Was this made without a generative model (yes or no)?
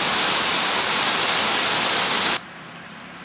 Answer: yes